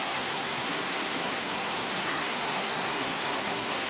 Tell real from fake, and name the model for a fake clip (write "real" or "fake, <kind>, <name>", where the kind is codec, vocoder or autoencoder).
fake, codec, SNAC